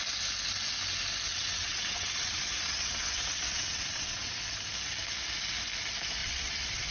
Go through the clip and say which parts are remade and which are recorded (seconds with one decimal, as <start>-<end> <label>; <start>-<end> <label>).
0.0-1.3 recorded; 1.3-4.4 remade; 4.4-6.2 recorded; 6.2-6.9 remade